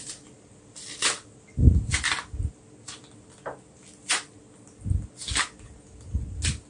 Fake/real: real